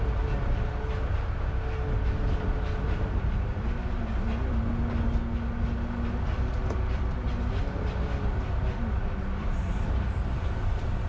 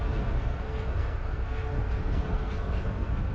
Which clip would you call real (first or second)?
first